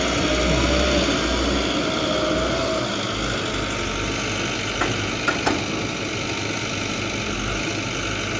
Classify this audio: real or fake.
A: real